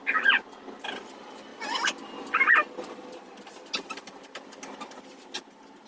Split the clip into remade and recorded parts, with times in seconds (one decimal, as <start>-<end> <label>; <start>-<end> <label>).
0.0-5.9 recorded